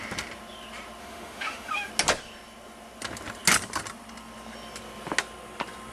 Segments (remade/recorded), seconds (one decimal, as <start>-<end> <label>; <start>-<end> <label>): 0.0-1.0 recorded; 1.0-1.9 remade; 1.9-5.9 recorded